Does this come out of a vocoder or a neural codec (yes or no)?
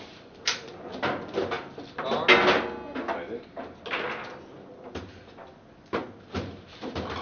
no